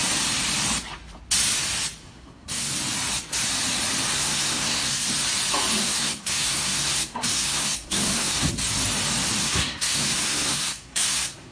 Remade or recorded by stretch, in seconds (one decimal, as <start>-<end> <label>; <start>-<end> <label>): 0.0-2.0 recorded; 2.0-2.7 remade; 2.7-4.1 recorded; 4.1-5.1 remade; 5.1-5.8 recorded; 5.8-8.5 remade; 8.5-9.4 recorded; 9.4-11.5 remade